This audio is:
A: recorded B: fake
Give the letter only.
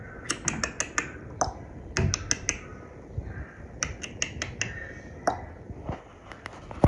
A